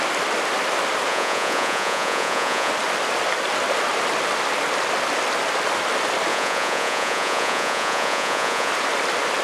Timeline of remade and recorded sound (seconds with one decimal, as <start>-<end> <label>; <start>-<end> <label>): 0.0-1.1 recorded; 1.1-2.7 remade; 2.7-6.3 recorded; 6.3-8.7 remade; 8.7-9.4 recorded